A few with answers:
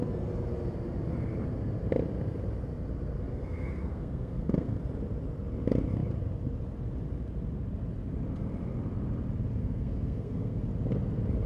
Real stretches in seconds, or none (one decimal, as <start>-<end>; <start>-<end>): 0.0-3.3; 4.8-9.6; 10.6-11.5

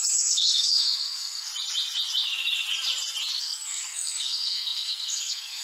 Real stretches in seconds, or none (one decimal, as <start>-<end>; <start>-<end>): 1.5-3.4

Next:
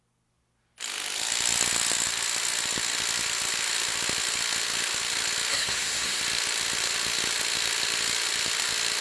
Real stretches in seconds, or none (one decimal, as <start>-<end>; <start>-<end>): 0.0-5.5; 6.2-9.0

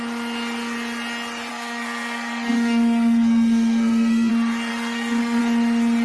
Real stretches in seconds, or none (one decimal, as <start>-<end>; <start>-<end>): 0.0-1.5; 4.3-4.7; 5.4-6.0